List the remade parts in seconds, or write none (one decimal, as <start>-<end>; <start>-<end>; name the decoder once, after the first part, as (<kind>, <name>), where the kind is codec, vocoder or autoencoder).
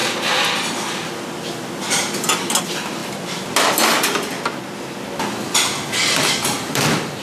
2.6-3.0 (vocoder, BigVGAN v2); 6.3-7.2